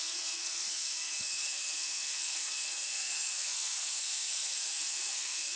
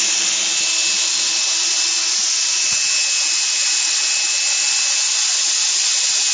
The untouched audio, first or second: second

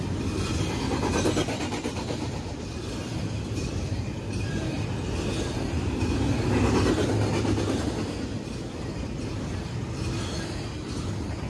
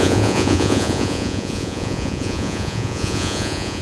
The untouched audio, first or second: first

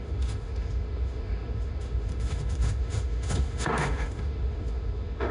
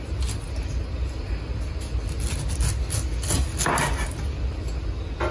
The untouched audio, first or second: second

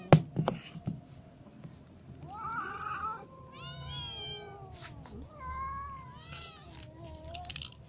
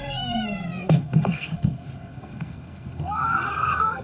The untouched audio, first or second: first